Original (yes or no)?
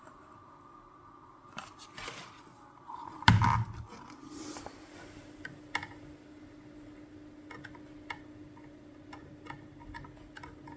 yes